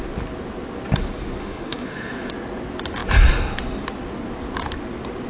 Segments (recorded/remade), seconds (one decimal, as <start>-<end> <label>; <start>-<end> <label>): 0.0-1.4 recorded; 1.4-2.3 remade; 2.3-5.3 recorded